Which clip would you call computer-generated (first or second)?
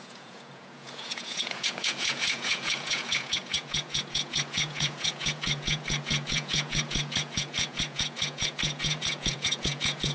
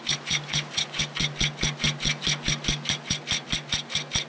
first